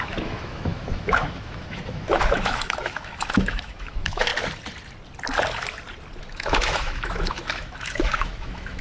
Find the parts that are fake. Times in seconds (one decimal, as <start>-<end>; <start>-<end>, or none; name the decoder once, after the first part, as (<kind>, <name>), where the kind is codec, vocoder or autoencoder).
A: 0.0-4.3 (autoencoder, DAC-VAE); 6.2-8.8